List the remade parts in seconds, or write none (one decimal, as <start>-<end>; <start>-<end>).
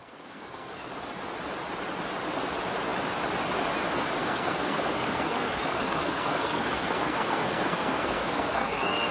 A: 0.0-0.9; 4.2-9.1